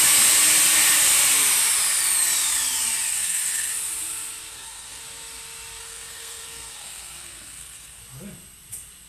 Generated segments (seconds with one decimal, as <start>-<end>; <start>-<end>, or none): 3.1-3.7; 4.5-5.0; 5.8-8.0